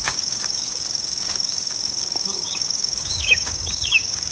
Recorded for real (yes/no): no